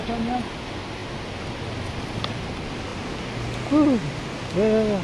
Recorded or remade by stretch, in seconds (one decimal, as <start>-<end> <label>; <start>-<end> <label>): 0.0-5.0 recorded